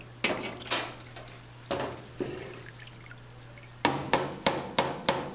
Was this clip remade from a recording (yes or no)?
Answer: no